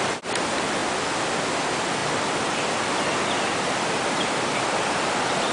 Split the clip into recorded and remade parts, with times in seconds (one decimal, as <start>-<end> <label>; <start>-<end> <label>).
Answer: 0.0-5.5 recorded